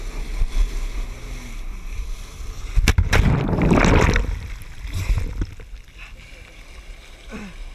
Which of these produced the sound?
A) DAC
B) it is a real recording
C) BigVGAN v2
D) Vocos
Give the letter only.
B